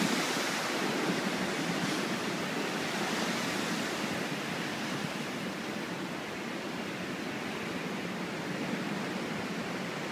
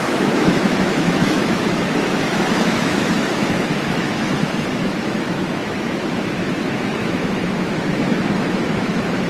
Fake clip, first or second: second